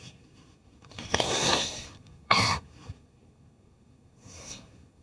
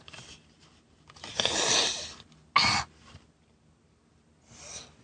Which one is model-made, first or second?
first